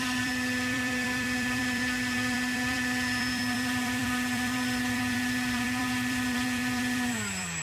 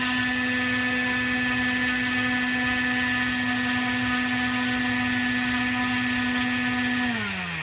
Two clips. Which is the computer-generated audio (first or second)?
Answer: first